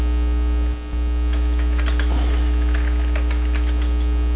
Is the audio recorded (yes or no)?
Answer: yes